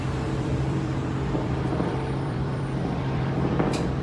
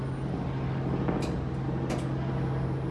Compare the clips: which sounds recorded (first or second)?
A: second